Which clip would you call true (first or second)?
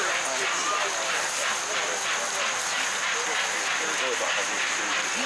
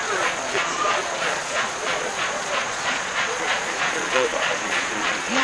first